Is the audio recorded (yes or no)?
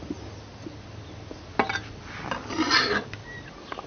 yes